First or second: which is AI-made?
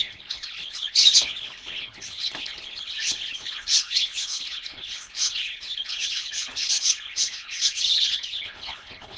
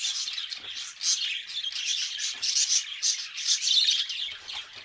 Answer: first